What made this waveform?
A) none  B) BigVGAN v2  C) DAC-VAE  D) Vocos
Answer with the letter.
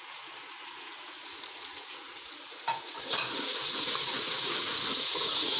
D